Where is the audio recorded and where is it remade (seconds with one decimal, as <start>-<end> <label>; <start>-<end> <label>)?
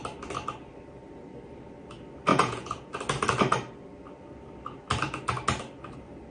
0.0-2.3 recorded; 2.3-3.0 remade; 3.0-6.3 recorded